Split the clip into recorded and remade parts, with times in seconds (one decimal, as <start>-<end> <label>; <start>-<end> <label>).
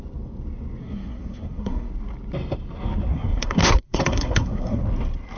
0.0-0.8 recorded; 0.8-1.9 remade; 1.9-3.1 recorded; 3.1-4.8 remade; 4.8-5.4 recorded